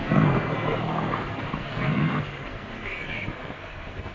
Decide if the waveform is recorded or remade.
remade